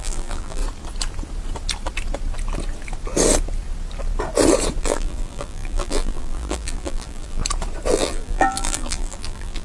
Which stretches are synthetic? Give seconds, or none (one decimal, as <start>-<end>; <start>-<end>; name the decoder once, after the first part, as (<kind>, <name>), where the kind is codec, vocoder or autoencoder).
0.0-0.6 (vocoder, BigVGAN v2); 4.8-7.4; 7.9-9.6